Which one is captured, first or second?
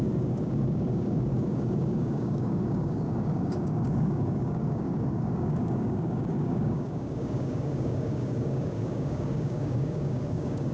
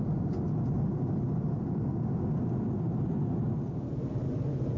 second